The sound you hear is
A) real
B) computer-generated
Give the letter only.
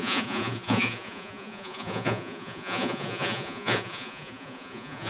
B